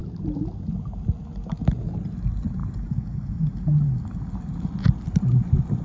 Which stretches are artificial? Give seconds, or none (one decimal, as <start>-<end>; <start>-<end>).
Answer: none